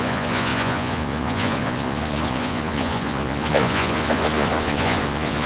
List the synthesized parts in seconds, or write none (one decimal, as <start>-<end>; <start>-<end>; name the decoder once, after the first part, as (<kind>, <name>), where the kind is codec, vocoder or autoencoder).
0.0-5.5 (vocoder, Vocos)